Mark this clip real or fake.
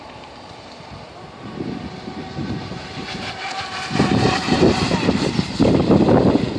fake